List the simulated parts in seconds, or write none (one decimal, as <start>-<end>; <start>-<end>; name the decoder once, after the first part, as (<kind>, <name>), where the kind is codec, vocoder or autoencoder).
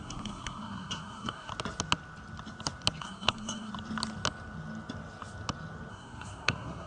0.0-1.5 (codec, SNAC); 3.0-3.7; 5.9-6.9